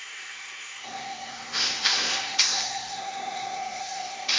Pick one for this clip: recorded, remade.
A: remade